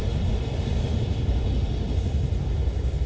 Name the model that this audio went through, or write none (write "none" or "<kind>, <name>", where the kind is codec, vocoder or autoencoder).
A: none